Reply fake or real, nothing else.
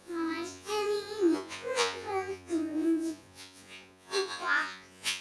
fake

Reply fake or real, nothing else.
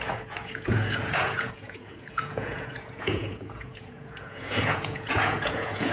fake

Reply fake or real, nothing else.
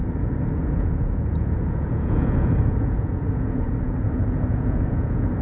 fake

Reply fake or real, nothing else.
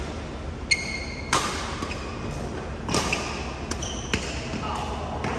real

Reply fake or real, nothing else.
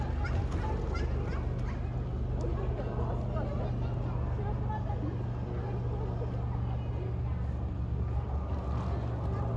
real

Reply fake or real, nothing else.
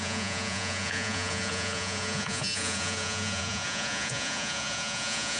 fake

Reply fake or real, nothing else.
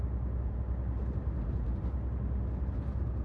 real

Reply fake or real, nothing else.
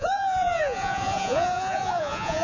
fake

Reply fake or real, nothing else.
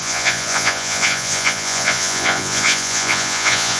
fake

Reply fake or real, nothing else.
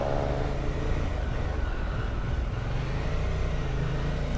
real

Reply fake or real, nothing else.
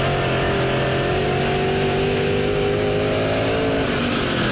real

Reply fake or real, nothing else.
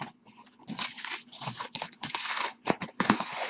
fake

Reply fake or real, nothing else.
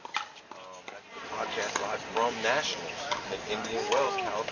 real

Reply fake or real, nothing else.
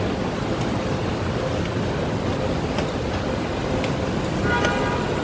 real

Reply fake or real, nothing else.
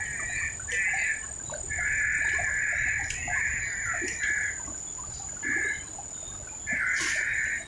real